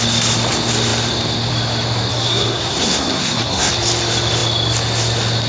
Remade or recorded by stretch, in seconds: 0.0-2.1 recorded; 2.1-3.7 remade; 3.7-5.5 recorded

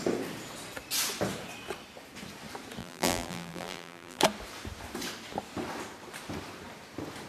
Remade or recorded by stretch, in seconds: 0.0-2.8 recorded; 2.8-4.2 remade; 4.2-7.3 recorded

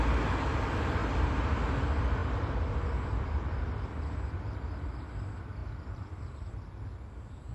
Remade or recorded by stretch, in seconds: 0.0-5.6 recorded; 5.6-6.8 remade; 6.8-7.5 recorded

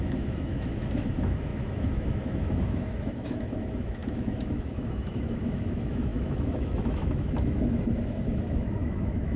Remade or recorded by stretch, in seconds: 0.0-9.4 remade

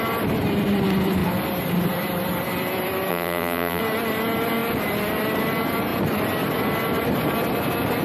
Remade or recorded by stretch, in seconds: 0.0-3.1 recorded; 3.1-3.8 remade; 3.8-8.0 recorded